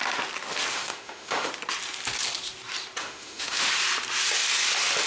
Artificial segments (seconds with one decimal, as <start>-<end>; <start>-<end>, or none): 0.7-1.5; 3.0-3.7